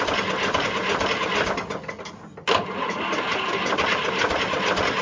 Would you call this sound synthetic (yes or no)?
no